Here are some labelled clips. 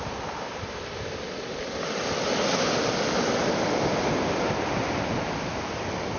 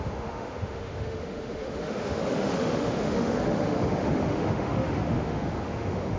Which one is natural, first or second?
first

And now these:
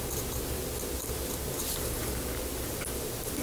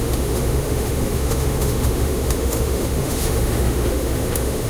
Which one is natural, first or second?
first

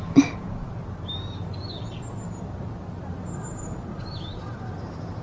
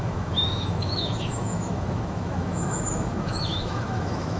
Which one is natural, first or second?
first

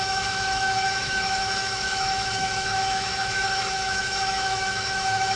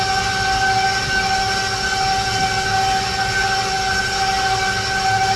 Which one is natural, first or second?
second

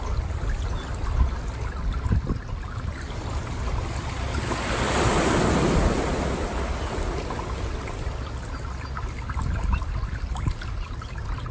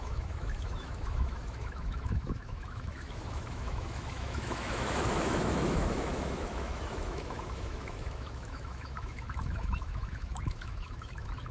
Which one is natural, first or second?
first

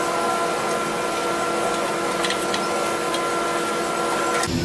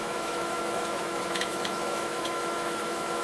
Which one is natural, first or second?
first